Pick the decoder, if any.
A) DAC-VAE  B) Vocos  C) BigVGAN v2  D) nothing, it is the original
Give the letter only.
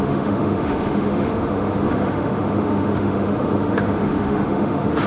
A